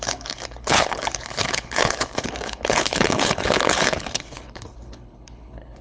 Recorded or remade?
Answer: remade